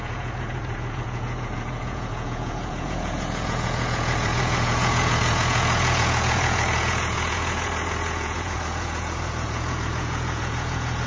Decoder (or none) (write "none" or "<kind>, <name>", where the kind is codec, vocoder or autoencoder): vocoder, Vocos